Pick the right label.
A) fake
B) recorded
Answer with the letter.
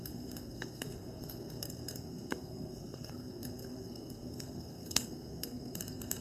A